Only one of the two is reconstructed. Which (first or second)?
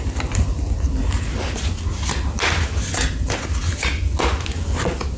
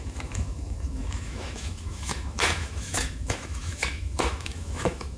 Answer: second